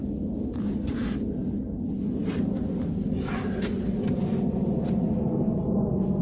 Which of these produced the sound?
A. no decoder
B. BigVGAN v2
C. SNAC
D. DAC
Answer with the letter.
A